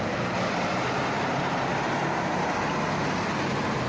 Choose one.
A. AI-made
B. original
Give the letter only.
B